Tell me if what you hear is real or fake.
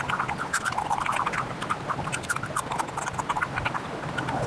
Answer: real